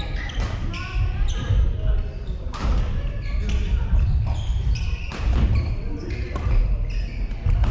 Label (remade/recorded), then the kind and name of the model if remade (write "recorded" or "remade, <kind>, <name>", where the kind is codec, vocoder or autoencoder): recorded